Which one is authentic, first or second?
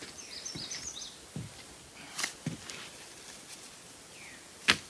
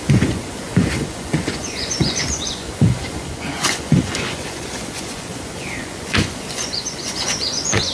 first